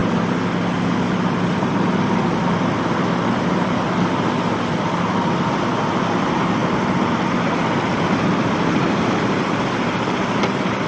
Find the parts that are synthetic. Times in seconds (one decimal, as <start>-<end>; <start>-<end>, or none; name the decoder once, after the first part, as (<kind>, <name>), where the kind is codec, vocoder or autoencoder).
6.6-10.9 (vocoder, BigVGAN v2)